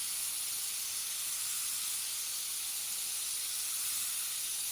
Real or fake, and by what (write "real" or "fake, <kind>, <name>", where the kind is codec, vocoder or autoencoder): real